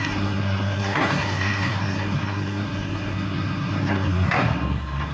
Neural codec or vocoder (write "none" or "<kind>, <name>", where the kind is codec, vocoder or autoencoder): codec, SNAC